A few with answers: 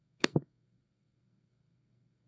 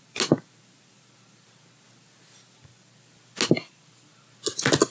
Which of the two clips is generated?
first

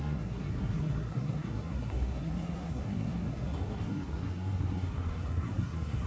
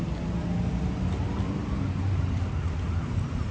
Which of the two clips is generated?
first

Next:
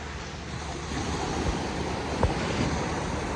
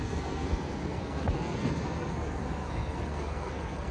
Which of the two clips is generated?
second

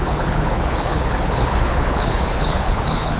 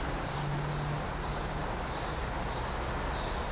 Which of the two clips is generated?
first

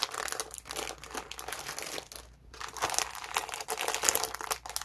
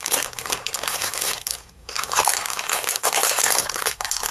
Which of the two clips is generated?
second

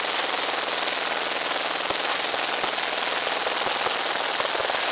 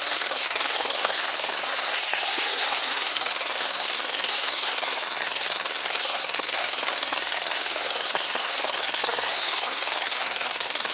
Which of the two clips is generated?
second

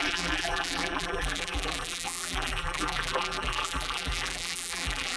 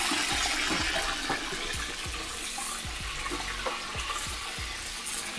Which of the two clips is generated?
first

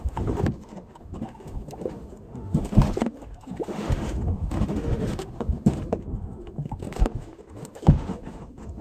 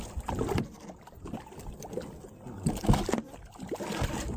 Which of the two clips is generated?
first